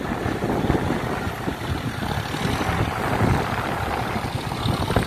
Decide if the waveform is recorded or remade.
recorded